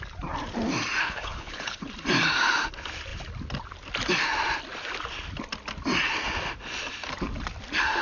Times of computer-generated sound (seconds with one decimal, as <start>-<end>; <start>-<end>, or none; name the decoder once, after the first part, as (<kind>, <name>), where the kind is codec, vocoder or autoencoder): 1.0-1.8 (codec, HILCodec)

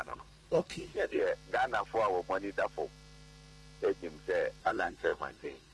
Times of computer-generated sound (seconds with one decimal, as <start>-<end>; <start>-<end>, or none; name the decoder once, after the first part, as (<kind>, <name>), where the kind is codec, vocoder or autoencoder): 0.0-1.2 (codec, SNAC); 4.6-5.7

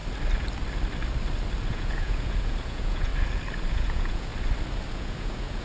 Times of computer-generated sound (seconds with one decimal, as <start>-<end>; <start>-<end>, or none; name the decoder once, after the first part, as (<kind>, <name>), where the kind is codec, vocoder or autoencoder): 1.7-3.1 (vocoder, Vocos); 3.7-4.3; 4.9-5.6